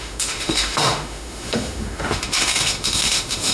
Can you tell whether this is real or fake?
fake